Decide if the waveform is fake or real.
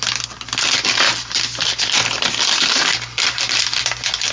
real